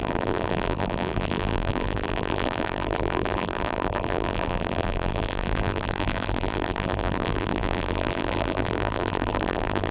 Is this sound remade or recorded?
remade